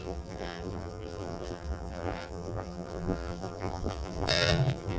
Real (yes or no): no